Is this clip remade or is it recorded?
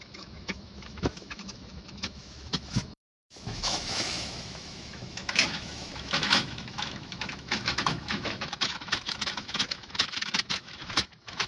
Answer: remade